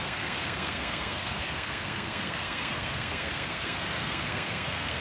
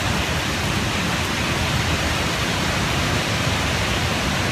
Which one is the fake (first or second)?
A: first